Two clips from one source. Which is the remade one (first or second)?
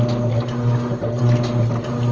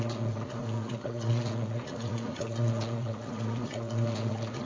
second